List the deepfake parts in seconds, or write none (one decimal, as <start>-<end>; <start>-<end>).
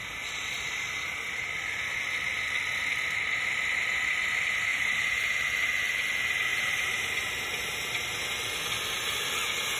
0.0-1.8; 4.7-5.5; 6.5-7.1